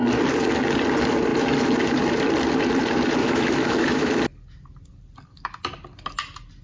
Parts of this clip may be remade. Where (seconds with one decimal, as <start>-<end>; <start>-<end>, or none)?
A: 3.2-4.1